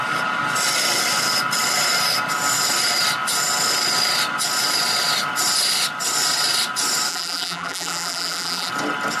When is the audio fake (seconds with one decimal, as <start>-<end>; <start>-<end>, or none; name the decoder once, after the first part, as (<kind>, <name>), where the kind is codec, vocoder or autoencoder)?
7.1-8.7 (vocoder, BigVGAN v2)